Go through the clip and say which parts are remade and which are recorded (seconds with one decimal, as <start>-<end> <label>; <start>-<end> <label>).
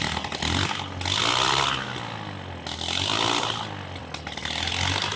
0.0-5.2 recorded